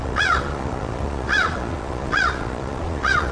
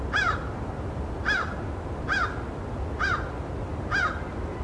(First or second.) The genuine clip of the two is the second